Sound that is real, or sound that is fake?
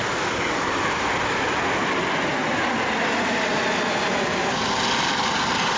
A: real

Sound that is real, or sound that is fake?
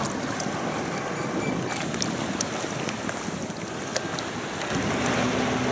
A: real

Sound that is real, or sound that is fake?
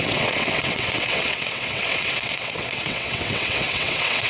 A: fake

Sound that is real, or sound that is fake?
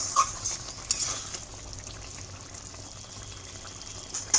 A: real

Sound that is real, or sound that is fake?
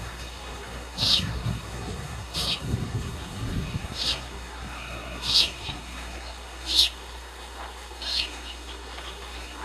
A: fake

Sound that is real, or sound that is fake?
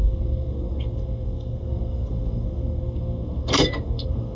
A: fake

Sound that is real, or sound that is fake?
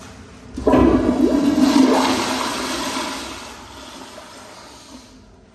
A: real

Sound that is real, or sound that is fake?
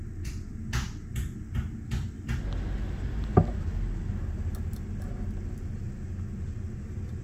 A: real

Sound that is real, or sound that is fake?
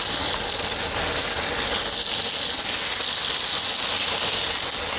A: real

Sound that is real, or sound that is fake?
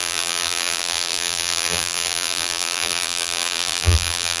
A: fake